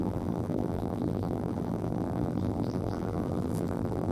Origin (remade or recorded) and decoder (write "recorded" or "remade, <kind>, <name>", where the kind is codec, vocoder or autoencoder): remade, vocoder, BigVGAN v2